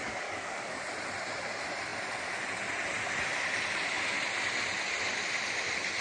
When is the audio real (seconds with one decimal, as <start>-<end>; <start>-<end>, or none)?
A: 0.8-6.0